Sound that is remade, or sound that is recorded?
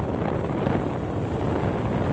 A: recorded